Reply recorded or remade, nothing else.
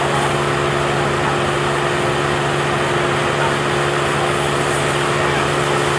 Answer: recorded